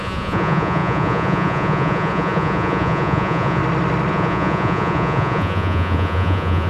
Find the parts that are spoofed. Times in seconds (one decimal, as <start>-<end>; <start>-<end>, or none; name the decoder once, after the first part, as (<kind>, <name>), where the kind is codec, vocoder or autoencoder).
0.0-3.6 (vocoder, Vocos); 4.1-6.7